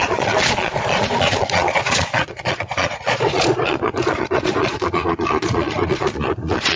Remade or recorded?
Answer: remade